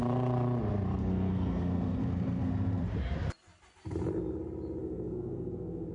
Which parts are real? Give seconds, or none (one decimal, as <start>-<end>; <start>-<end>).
0.0-1.0; 2.8-4.8